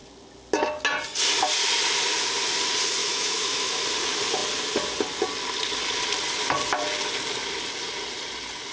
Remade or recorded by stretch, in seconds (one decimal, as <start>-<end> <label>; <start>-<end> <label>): 0.0-3.0 recorded; 3.0-3.7 remade; 3.7-8.7 recorded